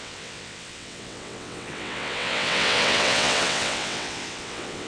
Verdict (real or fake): fake